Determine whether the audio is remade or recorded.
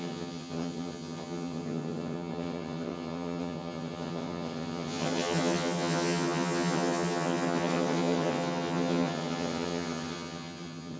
remade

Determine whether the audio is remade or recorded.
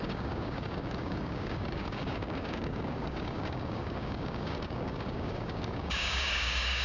remade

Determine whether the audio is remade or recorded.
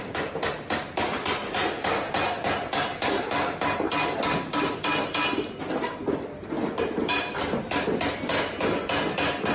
recorded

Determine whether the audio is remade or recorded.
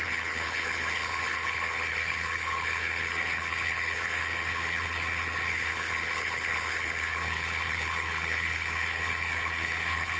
remade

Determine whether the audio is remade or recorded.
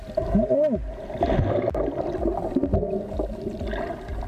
recorded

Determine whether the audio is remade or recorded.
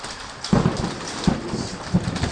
recorded